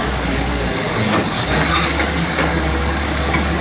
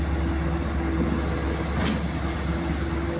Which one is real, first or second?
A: second